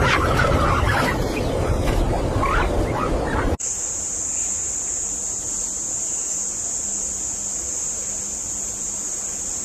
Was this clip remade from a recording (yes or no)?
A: no